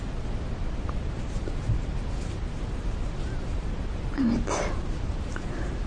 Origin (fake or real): real